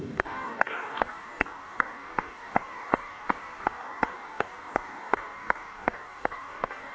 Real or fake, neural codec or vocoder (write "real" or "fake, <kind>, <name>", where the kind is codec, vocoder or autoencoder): fake, codec, DAC